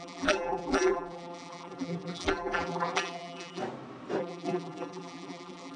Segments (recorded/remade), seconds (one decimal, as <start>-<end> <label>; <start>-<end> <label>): 0.0-3.6 remade; 3.6-4.2 recorded; 4.2-5.8 remade